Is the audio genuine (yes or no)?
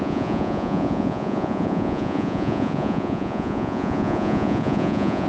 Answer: no